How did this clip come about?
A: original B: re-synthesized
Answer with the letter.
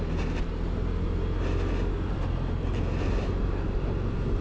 A